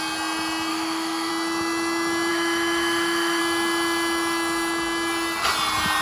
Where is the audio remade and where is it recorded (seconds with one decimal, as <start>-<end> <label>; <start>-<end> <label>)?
0.0-0.7 recorded; 0.7-1.3 remade; 1.3-2.3 recorded; 2.3-3.4 remade; 3.4-6.0 recorded